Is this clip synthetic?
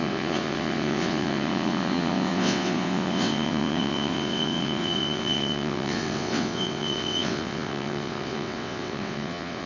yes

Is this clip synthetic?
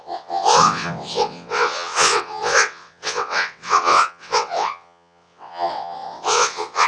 yes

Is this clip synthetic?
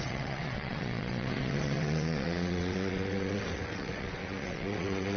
yes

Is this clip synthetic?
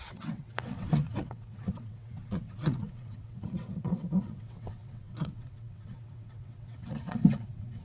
yes